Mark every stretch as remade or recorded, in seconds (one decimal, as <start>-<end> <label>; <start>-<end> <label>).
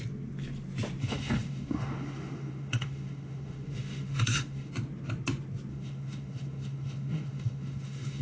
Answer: 0.0-1.0 recorded; 1.0-4.7 remade; 4.7-5.7 recorded; 5.7-8.2 remade